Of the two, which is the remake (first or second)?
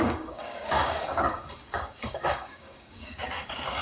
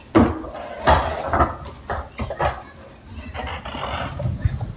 first